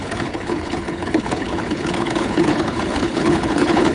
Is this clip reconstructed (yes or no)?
yes